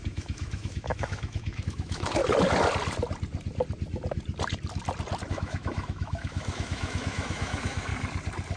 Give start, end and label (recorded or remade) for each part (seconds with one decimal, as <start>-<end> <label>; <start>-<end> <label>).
0.0-2.2 remade; 2.2-5.3 recorded; 5.3-7.9 remade; 7.9-8.6 recorded

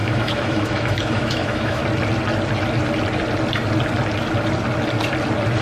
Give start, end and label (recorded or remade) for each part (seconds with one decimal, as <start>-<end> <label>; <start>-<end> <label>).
0.0-1.8 remade; 1.8-5.6 recorded